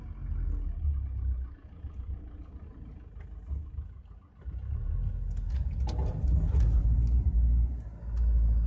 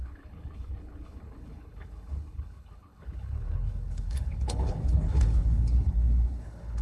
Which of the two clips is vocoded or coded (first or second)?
second